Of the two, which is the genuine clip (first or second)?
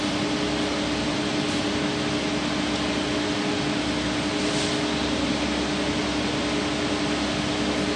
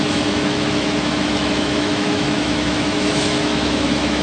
first